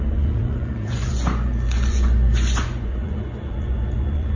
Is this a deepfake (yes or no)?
yes